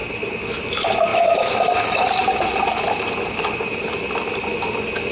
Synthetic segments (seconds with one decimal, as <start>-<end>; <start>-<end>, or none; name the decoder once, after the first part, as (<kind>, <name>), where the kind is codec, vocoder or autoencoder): 1.1-4.2 (vocoder, BigVGAN v2)